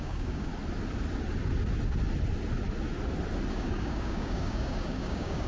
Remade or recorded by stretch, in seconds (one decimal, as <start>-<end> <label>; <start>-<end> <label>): 0.0-0.5 remade; 0.5-3.5 recorded; 3.5-5.5 remade